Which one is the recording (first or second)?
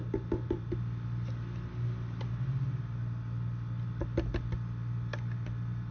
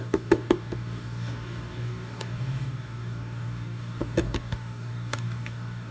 first